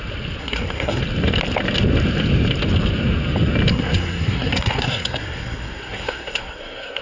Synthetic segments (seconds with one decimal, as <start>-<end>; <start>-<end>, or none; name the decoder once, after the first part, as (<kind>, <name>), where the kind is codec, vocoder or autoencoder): 0.4-1.0 (codec, SNAC); 3.7-7.0